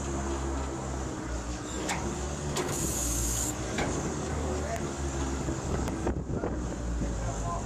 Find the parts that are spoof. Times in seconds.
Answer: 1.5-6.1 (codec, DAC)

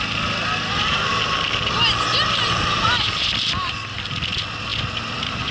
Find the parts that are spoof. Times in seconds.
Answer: none

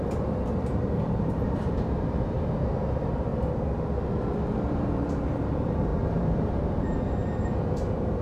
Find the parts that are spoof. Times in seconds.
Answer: 0.0-3.3 (vocoder, BigVGAN v2); 4.5-8.2

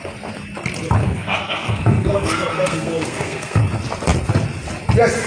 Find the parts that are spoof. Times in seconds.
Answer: 1.0-3.6 (codec, SNAC)

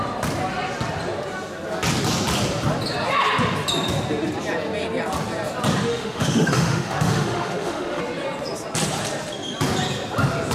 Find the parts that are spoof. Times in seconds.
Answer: 5.9-8.0 (autoencoder, DAC-VAE)

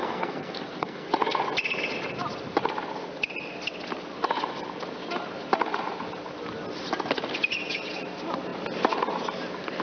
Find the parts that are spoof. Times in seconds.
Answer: 0.0-1.1 (codec, SNAC)

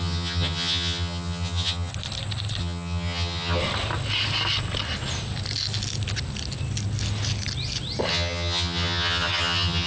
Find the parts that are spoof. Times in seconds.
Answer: 0.0-1.9 (vocoder, HiFi-GAN); 2.6-3.6; 8.1-9.9

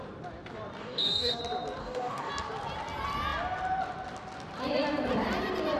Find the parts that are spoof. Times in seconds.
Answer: 0.8-1.4 (codec, DAC); 1.8-2.3